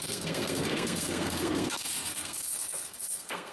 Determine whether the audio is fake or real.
fake